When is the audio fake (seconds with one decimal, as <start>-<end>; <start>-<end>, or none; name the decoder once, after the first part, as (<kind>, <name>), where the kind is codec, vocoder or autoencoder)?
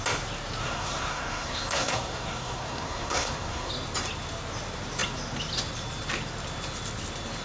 0.6-3.7 (codec, SNAC)